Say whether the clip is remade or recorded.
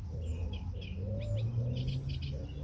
recorded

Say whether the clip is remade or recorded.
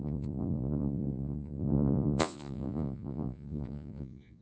remade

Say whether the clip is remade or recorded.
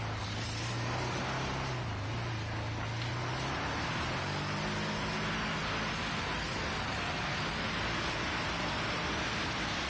recorded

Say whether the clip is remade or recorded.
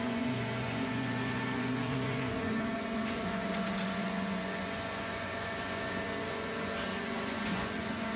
remade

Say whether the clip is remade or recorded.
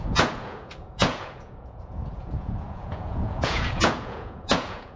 remade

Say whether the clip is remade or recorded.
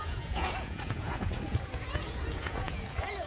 remade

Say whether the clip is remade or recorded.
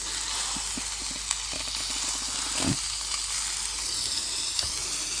recorded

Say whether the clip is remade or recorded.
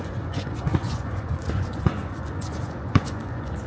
remade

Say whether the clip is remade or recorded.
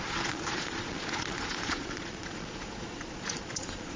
remade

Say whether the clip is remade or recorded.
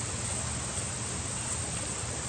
recorded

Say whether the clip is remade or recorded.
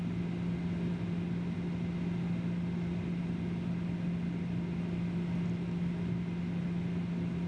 recorded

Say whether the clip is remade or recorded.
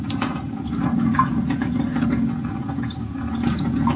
remade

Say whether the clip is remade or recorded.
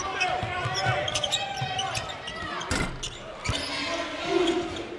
recorded